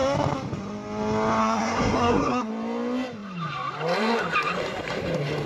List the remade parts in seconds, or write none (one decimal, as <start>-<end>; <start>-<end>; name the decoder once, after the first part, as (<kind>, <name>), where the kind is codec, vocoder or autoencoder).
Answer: 1.4-2.5 (codec, SNAC)